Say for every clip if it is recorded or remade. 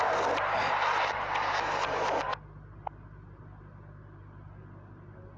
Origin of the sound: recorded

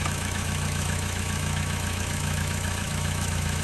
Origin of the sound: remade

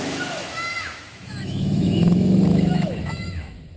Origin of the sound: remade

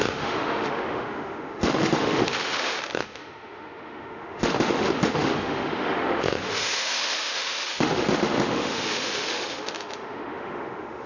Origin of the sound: remade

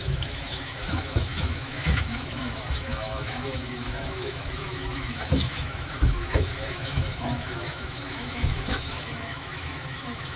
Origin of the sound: remade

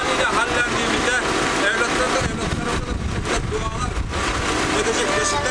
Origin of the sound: recorded